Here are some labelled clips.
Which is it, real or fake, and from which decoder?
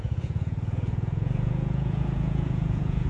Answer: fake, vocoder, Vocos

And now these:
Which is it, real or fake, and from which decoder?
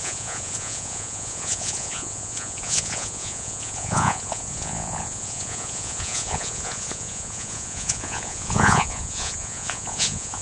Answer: fake, vocoder, Vocos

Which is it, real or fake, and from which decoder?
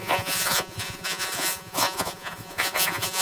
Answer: fake, vocoder, Vocos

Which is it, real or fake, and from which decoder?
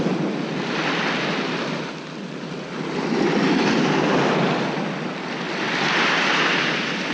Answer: real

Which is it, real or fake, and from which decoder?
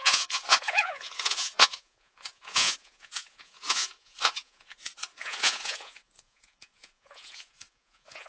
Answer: fake, vocoder, Vocos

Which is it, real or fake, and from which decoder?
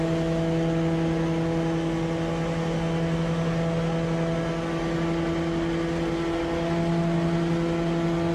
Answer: real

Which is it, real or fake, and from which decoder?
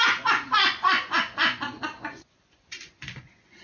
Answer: fake, vocoder, Vocos